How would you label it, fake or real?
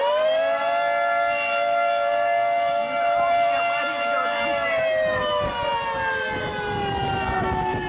fake